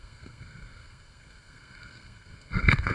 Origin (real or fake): fake